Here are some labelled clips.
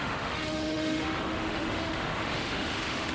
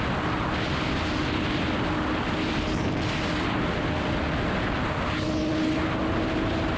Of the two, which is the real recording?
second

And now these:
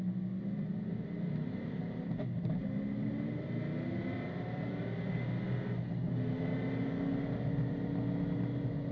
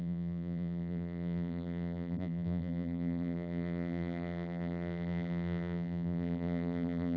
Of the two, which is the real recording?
first